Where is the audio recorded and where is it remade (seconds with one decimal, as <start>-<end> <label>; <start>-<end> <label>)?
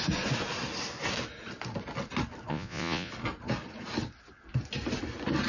0.0-2.5 recorded; 2.5-3.1 remade; 3.1-5.5 recorded